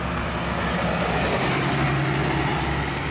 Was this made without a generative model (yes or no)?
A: yes